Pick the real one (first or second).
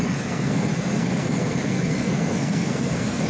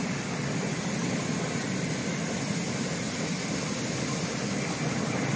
second